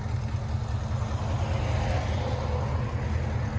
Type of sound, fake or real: real